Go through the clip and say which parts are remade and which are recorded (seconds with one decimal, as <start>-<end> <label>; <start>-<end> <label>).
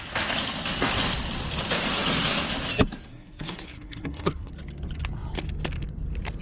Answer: 0.0-3.1 recorded; 3.1-4.5 remade; 4.5-6.4 recorded